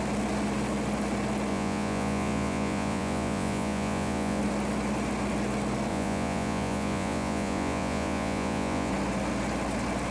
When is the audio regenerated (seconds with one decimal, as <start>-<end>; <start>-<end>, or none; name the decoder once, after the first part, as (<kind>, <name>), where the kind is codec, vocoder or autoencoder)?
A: 1.5-4.4 (vocoder, Vocos); 5.9-8.9